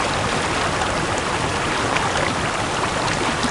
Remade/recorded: remade